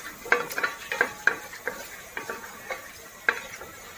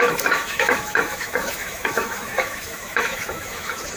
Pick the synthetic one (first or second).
second